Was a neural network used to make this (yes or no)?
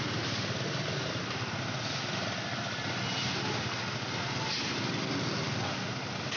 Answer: no